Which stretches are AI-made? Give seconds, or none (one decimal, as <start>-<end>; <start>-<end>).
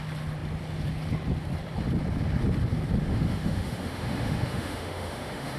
3.0-5.6